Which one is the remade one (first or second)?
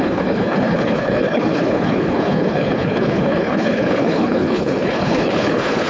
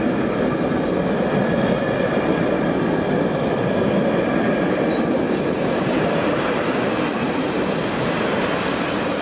first